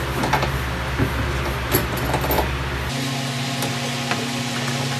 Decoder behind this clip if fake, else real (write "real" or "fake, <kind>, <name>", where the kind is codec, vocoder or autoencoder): real